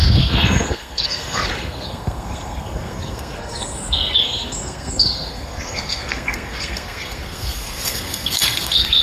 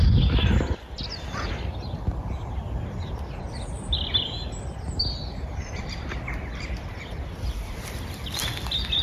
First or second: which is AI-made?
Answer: first